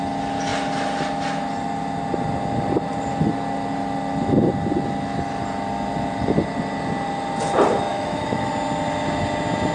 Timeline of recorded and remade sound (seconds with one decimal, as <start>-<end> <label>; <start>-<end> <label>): 0.0-7.9 recorded; 7.9-8.5 remade; 8.5-9.7 recorded